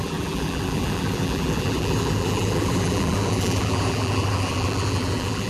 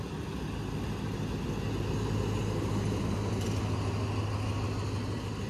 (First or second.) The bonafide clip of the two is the second